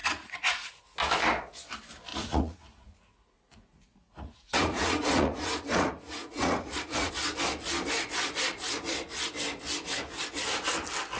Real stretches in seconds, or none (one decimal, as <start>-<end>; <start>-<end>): 0.8-2.1; 7.1-11.2